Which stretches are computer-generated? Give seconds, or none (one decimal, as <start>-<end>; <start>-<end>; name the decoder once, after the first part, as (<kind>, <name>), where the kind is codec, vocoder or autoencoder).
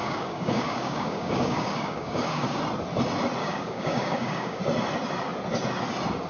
0.0-2.6 (codec, DAC); 3.4-4.6